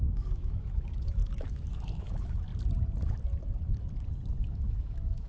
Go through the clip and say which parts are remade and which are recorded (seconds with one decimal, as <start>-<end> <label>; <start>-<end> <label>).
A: 0.0-2.5 remade; 2.5-4.4 recorded; 4.4-5.3 remade

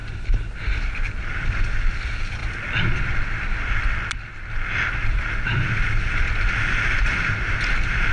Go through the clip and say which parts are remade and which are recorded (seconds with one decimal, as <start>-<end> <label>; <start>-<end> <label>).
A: 0.0-8.1 recorded

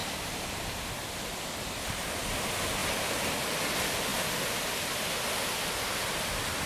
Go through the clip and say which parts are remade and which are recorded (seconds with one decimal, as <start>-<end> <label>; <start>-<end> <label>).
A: 0.0-0.6 remade; 0.6-2.8 recorded; 2.8-3.6 remade; 3.6-6.7 recorded

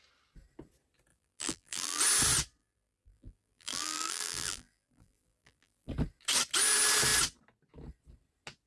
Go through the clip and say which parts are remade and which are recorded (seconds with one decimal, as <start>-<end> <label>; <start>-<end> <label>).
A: 0.0-1.1 recorded; 1.1-2.0 remade; 2.0-2.6 recorded; 2.6-5.9 remade; 5.9-8.7 recorded

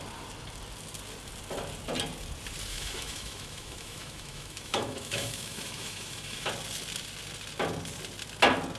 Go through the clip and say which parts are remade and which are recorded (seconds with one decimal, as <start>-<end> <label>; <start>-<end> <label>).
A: 0.0-2.7 recorded; 2.7-6.5 remade; 6.5-8.8 recorded

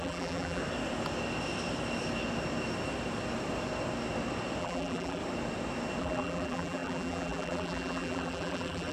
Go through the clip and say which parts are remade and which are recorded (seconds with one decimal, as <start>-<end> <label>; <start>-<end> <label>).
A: 0.0-0.6 remade; 0.6-4.6 recorded; 4.6-5.2 remade; 5.2-6.0 recorded; 6.0-8.9 remade

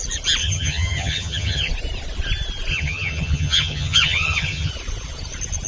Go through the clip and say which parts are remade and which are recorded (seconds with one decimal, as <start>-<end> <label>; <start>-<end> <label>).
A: 0.0-0.4 recorded; 0.4-1.7 remade; 1.7-2.7 recorded; 2.7-4.7 remade; 4.7-5.7 recorded